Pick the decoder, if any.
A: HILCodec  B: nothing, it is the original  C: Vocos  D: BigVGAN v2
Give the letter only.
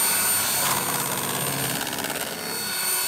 B